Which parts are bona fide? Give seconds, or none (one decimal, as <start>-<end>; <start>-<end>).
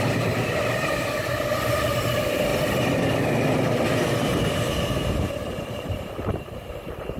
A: 2.5-5.1